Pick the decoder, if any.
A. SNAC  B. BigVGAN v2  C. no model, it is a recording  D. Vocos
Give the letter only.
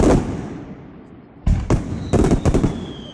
C